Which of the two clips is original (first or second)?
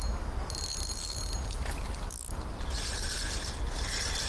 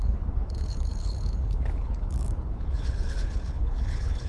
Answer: first